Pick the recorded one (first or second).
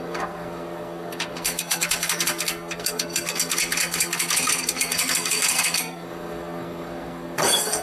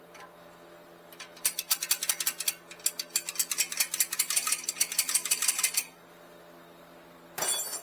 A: second